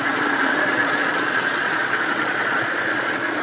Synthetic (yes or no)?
yes